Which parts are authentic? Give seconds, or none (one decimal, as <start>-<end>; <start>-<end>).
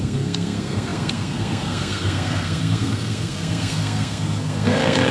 none